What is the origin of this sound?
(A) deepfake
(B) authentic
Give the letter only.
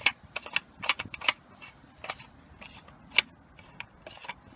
B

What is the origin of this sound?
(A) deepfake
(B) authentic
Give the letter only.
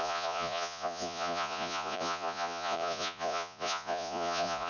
A